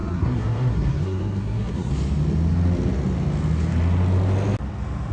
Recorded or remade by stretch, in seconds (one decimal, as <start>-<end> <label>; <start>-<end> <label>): 0.0-1.9 remade; 1.9-5.1 recorded